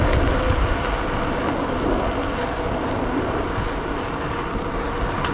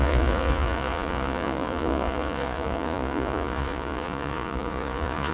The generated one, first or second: second